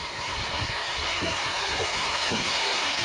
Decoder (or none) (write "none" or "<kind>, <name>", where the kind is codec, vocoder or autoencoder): codec, SNAC